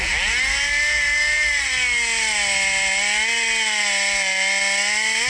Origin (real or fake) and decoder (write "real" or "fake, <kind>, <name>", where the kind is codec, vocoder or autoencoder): real